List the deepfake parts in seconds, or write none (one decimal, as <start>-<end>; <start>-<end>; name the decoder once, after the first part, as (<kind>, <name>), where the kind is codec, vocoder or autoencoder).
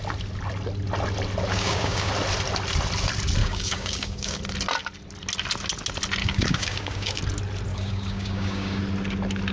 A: 1.5-2.1 (codec, DAC); 3.4-4.4; 6.2-7.2; 7.7-8.8